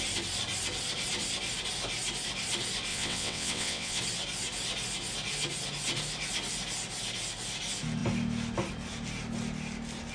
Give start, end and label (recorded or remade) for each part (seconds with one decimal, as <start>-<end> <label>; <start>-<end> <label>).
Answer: 0.0-2.9 recorded; 2.9-4.0 remade; 4.0-10.1 recorded